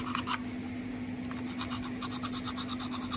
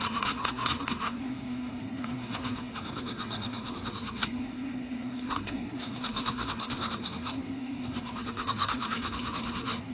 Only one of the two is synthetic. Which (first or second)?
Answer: second